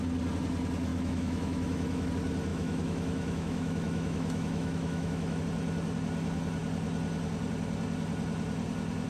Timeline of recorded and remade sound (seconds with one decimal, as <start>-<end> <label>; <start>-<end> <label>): 0.0-0.9 recorded; 0.9-2.1 remade; 2.1-2.5 recorded; 2.5-5.4 remade; 5.4-9.1 recorded